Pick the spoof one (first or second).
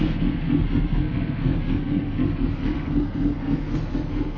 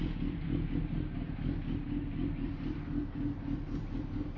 first